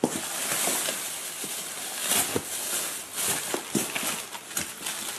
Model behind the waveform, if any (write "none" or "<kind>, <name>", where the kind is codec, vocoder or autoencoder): none